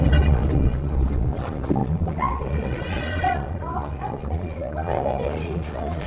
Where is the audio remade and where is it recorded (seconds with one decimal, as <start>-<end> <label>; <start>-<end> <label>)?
0.0-6.1 remade